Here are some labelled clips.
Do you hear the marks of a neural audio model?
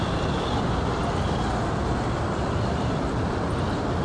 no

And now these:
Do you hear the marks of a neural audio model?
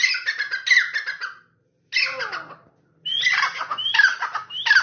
no